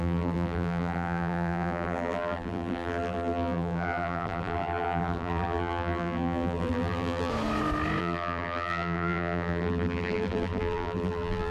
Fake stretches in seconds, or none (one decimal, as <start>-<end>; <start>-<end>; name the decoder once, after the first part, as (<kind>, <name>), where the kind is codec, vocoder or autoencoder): 0.0-7.3 (vocoder, BigVGAN v2); 8.0-11.5

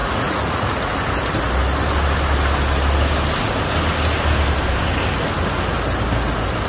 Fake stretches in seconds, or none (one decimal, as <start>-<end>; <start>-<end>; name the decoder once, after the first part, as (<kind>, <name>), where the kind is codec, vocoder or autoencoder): 0.0-0.9 (vocoder, Vocos)

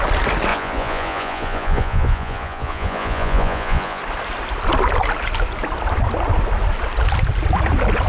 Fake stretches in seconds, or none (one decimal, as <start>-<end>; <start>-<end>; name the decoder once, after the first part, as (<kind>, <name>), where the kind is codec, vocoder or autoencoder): 0.5-4.0 (vocoder, Vocos)

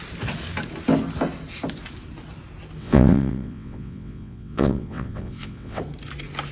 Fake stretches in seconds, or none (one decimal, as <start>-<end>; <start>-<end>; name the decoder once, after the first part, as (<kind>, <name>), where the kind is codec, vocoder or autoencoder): 2.8-5.8 (vocoder, WaveNeXt)